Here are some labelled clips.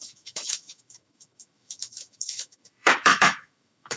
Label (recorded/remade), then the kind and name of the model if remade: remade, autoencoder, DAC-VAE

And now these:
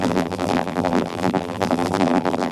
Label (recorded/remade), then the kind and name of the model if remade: remade, vocoder, BigVGAN v2